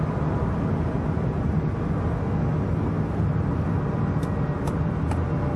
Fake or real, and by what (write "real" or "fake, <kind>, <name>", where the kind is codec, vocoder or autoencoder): real